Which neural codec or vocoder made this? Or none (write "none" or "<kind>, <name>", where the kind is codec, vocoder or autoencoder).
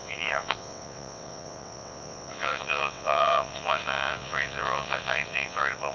vocoder, WaveNeXt